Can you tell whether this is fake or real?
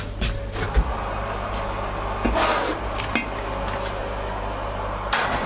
real